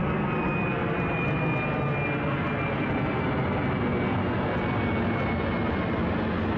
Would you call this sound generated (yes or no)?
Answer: no